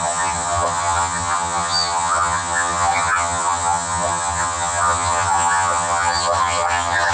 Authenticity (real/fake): fake